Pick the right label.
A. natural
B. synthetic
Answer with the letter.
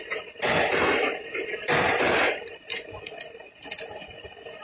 A